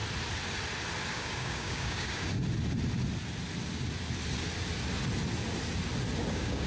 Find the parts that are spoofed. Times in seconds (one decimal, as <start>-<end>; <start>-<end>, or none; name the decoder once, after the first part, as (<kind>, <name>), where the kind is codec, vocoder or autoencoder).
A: 1.1-2.3 (codec, DAC); 6.3-6.7